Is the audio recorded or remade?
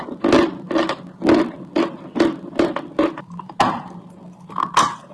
recorded